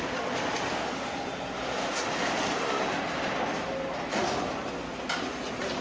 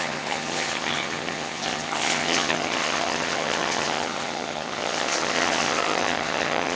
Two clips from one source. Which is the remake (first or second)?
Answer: second